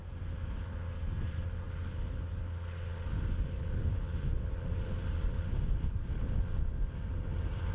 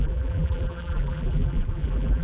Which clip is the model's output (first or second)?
second